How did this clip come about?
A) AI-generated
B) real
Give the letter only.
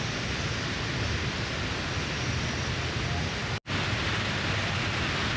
B